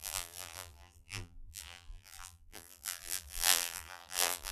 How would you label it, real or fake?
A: fake